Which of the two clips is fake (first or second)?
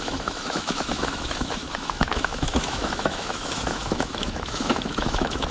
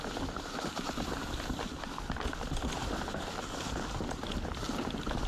first